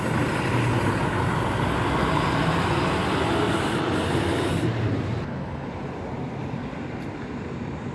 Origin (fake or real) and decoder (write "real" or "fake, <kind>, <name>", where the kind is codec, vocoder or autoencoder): real